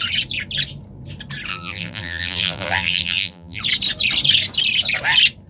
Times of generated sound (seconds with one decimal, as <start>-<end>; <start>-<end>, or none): 1.5-3.6